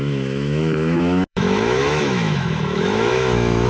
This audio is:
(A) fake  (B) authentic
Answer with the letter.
A